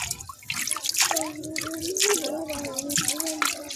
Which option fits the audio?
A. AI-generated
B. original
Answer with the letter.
B